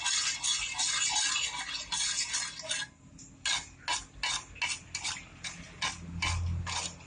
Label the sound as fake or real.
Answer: real